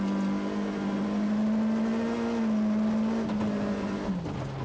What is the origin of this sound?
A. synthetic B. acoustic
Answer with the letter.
B